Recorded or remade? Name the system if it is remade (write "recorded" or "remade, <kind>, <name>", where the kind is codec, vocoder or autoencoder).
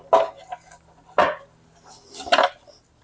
recorded